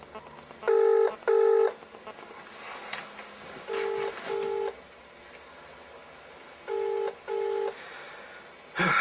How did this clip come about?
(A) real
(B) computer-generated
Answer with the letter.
A